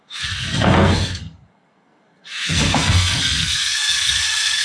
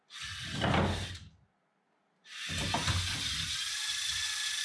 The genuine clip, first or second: second